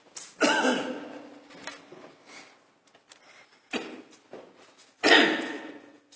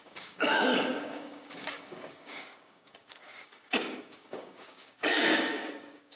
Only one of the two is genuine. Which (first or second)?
first